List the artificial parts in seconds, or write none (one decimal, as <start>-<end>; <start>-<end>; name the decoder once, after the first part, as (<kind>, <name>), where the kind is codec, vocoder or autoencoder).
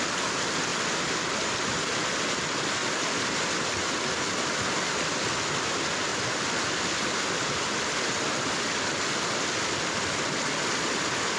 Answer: 0.7-1.9 (vocoder, BigVGAN v2); 2.8-3.9; 6.1-8.7